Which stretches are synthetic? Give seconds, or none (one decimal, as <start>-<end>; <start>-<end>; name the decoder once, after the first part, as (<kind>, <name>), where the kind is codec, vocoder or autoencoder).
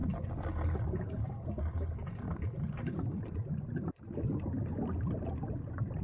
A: none